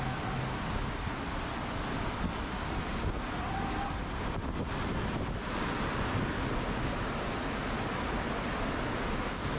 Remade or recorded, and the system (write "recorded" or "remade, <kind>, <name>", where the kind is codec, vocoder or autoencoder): recorded